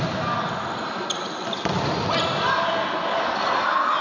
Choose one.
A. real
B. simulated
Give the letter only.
A